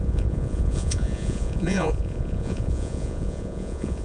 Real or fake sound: fake